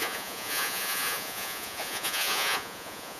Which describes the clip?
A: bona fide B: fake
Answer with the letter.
B